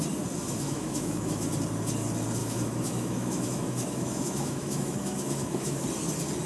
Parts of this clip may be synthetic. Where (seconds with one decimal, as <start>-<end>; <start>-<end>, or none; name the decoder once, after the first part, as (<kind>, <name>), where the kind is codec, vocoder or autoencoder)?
0.4-1.5 (autoencoder, DAC-VAE); 2.4-5.8